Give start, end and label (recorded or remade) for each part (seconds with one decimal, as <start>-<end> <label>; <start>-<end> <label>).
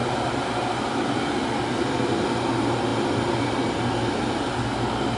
0.0-5.2 recorded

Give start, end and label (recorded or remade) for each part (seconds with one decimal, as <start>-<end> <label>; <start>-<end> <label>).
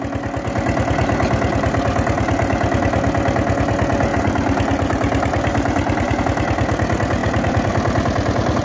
0.0-4.1 recorded; 4.1-6.2 remade; 6.2-7.2 recorded; 7.2-8.6 remade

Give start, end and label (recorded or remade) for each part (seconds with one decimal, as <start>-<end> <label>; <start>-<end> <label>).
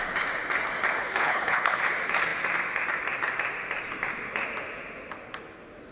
0.0-1.0 recorded; 1.0-1.8 remade; 1.8-5.9 recorded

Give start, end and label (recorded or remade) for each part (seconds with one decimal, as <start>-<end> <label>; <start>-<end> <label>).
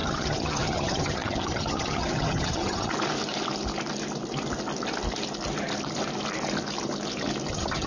0.0-2.9 remade; 2.9-7.5 recorded; 7.5-7.9 remade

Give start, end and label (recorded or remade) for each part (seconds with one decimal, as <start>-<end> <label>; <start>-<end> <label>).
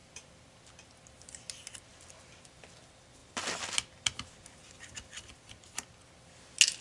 0.0-0.7 remade; 0.7-4.6 recorded; 4.6-6.0 remade; 6.0-6.8 recorded